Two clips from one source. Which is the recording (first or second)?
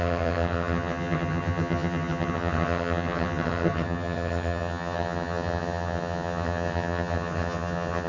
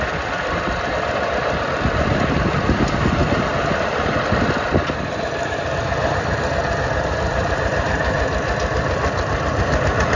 second